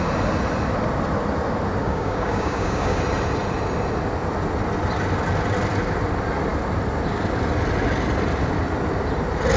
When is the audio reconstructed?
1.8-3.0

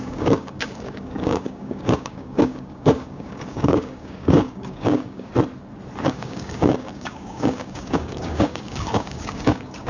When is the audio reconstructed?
0.0-5.3; 6.0-9.9

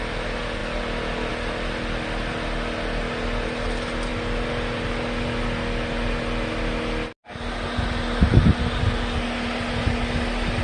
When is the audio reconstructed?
none

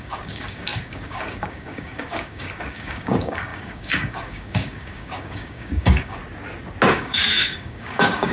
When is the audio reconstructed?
0.0-6.2; 6.9-8.3

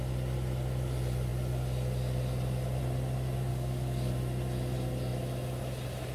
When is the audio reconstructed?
3.5-4.1

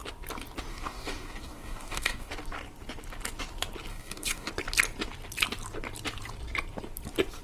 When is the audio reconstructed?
0.7-2.3; 3.9-4.5

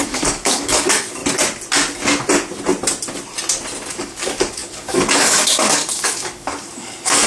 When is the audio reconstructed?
0.0-1.2; 3.9-7.3